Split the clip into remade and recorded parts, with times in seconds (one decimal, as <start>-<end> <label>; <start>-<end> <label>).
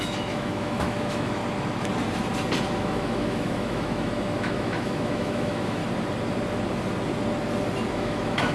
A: 0.0-1.4 remade; 1.4-2.7 recorded; 2.7-5.8 remade; 5.8-7.9 recorded; 7.9-8.5 remade